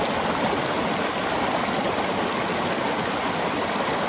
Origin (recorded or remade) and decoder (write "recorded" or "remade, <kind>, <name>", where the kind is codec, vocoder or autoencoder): recorded